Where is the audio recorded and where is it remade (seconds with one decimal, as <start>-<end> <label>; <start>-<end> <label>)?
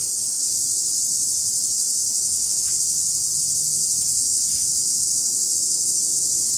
0.0-2.0 recorded; 2.0-2.6 remade; 2.6-4.1 recorded; 4.1-6.1 remade; 6.1-6.6 recorded